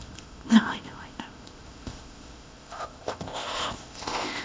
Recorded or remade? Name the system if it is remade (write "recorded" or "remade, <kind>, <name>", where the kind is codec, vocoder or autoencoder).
remade, codec, ZipCodec